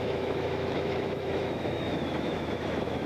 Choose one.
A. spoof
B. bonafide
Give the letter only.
A